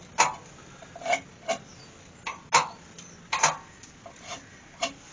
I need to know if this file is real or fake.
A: real